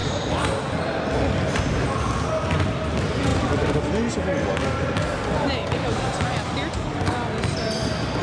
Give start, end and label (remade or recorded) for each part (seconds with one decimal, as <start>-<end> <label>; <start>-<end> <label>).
0.0-8.2 recorded